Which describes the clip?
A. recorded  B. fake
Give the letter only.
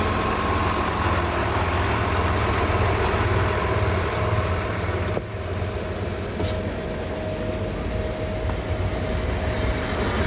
A